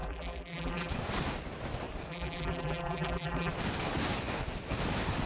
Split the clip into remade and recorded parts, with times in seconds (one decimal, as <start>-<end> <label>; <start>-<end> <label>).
0.0-0.9 remade; 0.9-2.1 recorded; 2.1-3.5 remade; 3.5-5.3 recorded